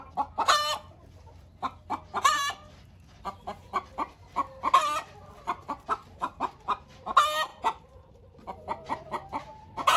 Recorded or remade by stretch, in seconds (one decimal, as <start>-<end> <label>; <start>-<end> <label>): 0.0-10.0 recorded